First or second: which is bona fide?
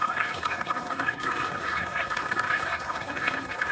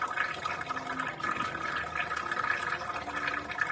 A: second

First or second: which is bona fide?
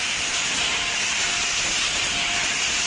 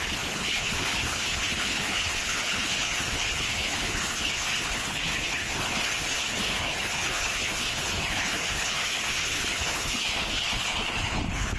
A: first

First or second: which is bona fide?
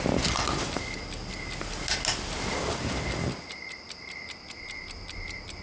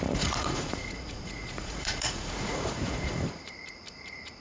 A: first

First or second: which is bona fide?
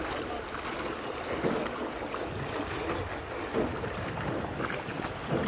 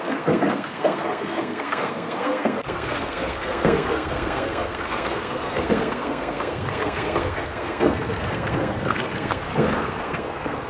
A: first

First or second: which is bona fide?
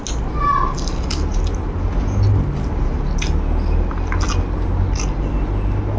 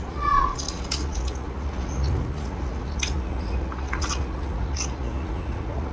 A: first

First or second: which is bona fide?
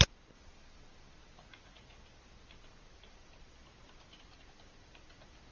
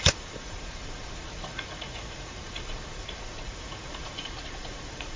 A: first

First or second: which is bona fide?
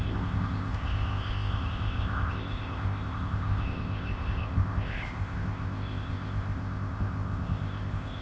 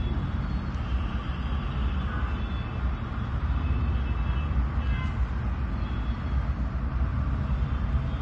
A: second